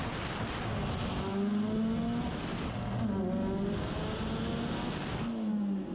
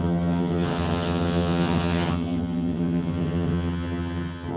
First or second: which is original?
first